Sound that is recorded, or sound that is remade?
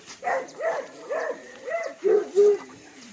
remade